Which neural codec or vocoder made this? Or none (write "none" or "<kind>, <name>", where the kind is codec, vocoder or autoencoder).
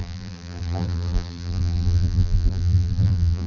vocoder, BigVGAN v2